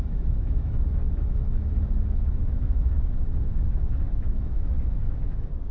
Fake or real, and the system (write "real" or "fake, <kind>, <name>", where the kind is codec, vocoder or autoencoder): fake, autoencoder, DAC-VAE